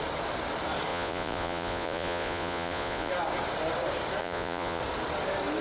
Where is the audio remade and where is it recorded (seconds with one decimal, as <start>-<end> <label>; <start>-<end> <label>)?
0.0-0.9 recorded; 0.9-3.1 remade; 3.1-4.2 recorded; 4.2-4.8 remade; 4.8-5.6 recorded